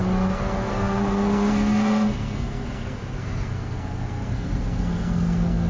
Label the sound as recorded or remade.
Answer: remade